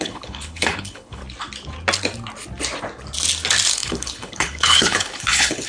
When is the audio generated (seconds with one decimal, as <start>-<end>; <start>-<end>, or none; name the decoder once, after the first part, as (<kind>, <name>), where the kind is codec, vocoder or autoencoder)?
0.0-1.2 (codec, HILCodec); 3.7-5.7